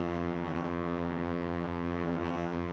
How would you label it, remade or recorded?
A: remade